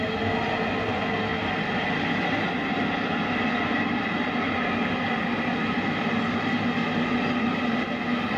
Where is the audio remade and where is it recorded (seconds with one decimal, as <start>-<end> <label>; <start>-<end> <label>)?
0.0-8.4 recorded